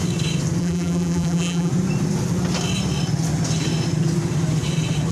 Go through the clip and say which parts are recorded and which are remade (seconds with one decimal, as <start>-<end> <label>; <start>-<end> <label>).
0.0-0.6 recorded; 0.6-1.7 remade; 1.7-5.1 recorded